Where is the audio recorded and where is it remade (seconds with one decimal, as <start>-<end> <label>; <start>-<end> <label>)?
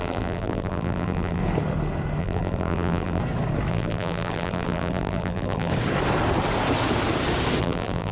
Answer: 0.0-1.4 remade; 1.4-2.2 recorded; 2.2-3.2 remade; 3.2-3.7 recorded; 3.7-5.7 remade; 5.7-7.6 recorded; 7.6-8.1 remade